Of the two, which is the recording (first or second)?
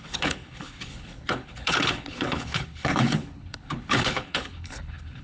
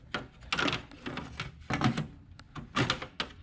second